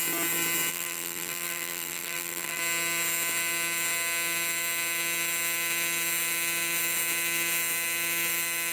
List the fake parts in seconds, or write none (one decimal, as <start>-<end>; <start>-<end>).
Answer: 0.7-2.6